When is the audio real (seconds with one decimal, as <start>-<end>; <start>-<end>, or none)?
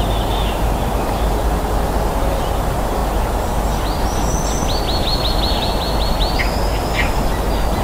0.0-7.8